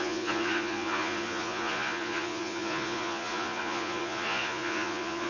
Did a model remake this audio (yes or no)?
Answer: yes